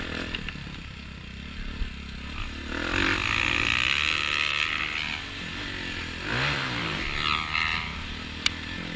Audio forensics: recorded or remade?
recorded